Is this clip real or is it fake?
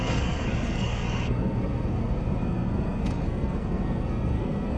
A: fake